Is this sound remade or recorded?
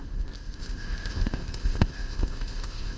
remade